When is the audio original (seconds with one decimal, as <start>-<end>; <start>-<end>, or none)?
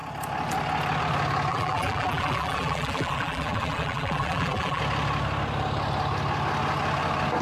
0.0-1.5; 4.8-7.4